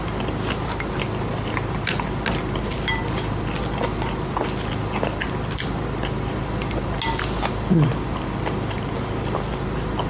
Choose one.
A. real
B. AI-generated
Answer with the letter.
A